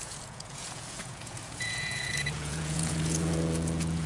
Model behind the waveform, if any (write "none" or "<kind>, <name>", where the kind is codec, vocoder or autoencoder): vocoder, Vocos